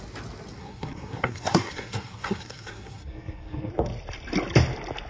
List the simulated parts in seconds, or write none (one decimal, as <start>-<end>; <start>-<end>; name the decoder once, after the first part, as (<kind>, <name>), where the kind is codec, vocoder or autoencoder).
0.6-3.7 (codec, SNAC)